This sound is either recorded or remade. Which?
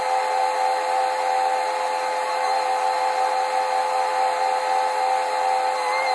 recorded